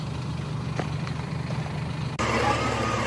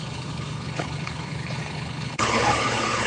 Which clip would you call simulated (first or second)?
second